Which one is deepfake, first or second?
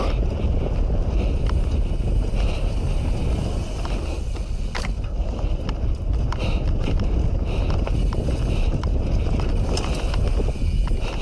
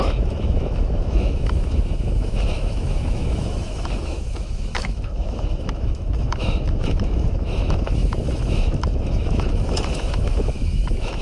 second